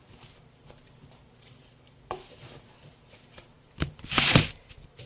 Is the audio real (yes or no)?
no